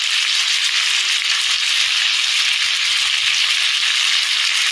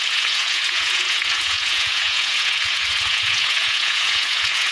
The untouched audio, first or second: first